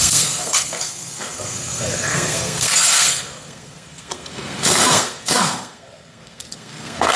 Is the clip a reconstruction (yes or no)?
yes